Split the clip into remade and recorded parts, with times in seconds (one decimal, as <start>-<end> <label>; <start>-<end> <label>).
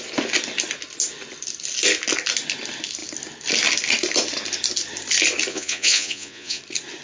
0.0-5.5 recorded; 5.5-6.6 remade; 6.6-7.0 recorded